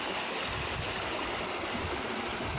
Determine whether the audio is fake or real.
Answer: real